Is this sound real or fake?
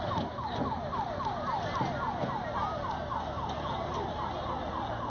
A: real